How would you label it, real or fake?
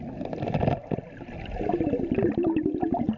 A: real